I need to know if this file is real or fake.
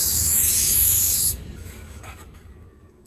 fake